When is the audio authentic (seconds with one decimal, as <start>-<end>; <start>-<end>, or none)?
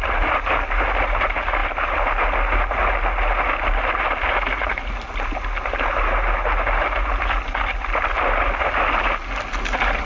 0.0-10.1